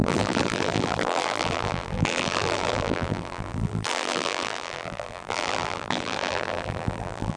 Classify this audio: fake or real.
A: fake